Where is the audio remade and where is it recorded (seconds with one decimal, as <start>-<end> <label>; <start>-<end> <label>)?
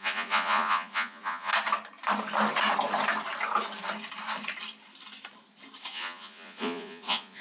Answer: 0.0-1.5 remade; 1.5-5.9 recorded; 5.9-7.4 remade